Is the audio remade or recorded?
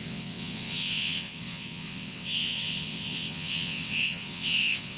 remade